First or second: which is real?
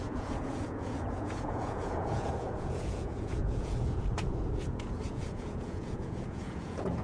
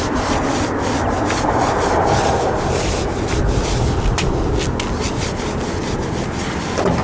second